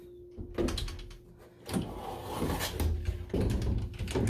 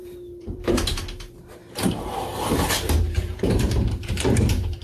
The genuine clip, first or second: first